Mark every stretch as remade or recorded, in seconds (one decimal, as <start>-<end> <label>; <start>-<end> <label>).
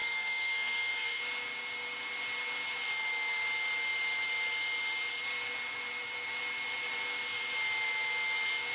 0.0-1.2 remade; 1.2-8.7 recorded